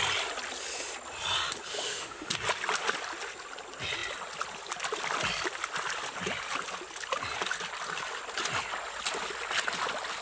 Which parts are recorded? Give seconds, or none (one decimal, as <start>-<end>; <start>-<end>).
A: 0.0-1.7; 2.3-10.2